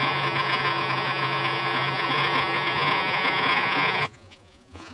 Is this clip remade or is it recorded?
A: remade